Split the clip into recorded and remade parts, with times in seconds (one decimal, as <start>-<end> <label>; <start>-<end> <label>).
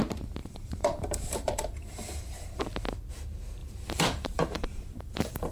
0.0-0.4 recorded; 0.4-2.6 remade; 2.6-3.6 recorded; 3.6-5.5 remade